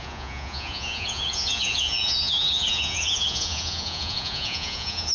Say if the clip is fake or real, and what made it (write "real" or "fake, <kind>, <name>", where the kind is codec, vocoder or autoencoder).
fake, vocoder, Vocos